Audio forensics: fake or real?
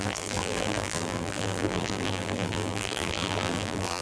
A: fake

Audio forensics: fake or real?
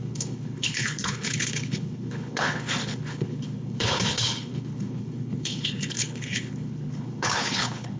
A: fake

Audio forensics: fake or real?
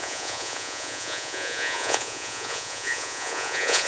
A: fake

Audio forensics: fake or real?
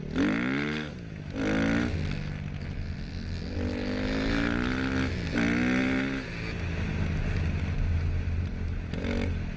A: real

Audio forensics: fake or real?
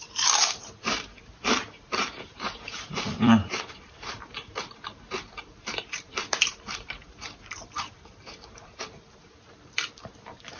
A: fake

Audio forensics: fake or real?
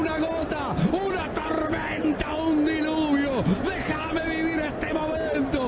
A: real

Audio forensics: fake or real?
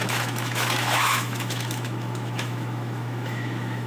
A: fake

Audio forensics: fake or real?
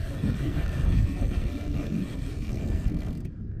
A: fake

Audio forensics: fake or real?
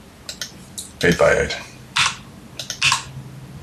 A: real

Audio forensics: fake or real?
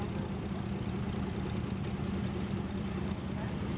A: real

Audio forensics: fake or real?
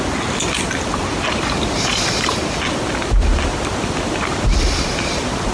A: real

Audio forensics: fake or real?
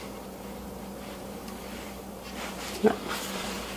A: fake